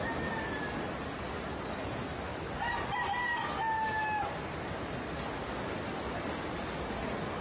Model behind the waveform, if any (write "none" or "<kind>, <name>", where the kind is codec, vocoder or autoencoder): none